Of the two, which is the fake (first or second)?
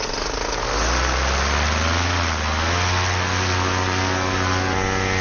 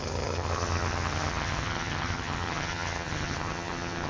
second